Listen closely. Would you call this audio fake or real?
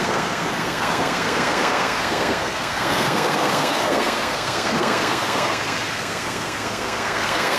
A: fake